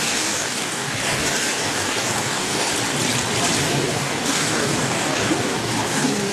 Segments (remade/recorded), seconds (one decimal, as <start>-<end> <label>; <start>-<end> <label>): 0.0-2.7 remade; 2.7-3.6 recorded; 3.6-6.3 remade